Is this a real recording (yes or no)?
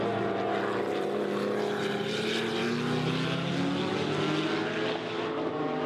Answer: yes